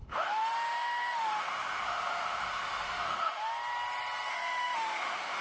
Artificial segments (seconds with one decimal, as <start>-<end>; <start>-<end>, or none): 0.0-3.4; 4.3-5.4

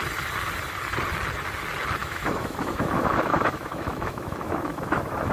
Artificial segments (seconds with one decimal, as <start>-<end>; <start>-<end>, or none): 2.0-5.3

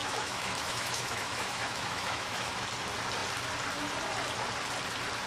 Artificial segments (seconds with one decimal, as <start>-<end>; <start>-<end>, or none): 0.0-2.5